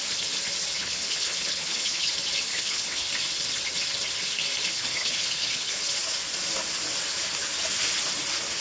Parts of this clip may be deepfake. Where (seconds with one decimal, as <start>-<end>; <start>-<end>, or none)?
0.8-2.1; 2.5-3.1; 4.7-5.8